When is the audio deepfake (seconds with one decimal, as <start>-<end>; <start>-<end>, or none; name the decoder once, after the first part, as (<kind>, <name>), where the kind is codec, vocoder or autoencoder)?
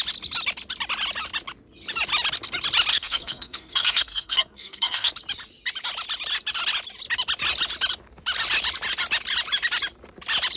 2.9-5.1 (codec, SNAC)